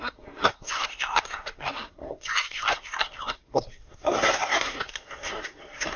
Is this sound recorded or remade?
remade